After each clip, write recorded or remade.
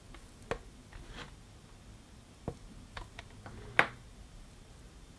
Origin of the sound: recorded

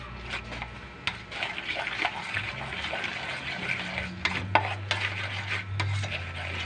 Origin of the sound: recorded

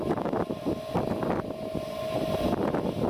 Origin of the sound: recorded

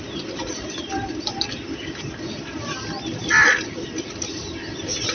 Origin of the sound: remade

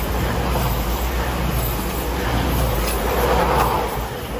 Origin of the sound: recorded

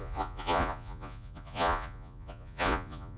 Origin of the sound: remade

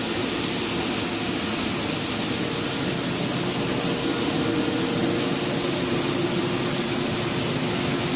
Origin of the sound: recorded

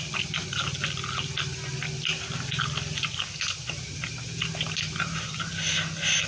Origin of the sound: recorded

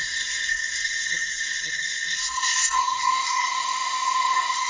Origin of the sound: remade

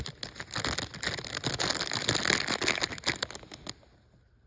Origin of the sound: recorded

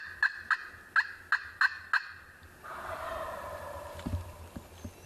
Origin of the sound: recorded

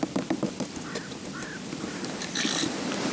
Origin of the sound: remade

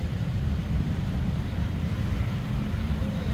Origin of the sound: remade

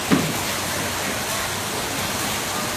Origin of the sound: recorded